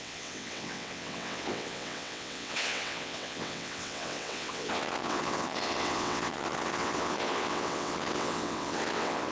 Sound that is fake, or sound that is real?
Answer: fake